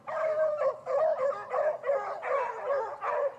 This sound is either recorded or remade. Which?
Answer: recorded